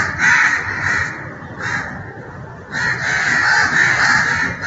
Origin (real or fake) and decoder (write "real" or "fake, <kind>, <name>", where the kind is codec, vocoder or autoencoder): real